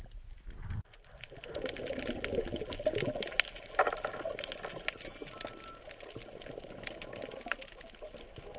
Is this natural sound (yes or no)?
yes